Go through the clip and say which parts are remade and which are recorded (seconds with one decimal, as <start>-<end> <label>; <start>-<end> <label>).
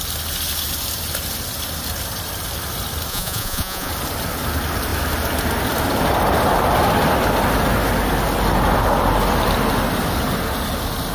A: 0.0-3.1 recorded; 3.1-3.9 remade; 3.9-11.1 recorded